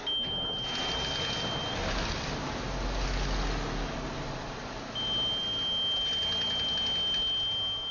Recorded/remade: recorded